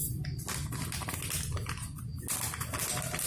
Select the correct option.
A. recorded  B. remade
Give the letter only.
A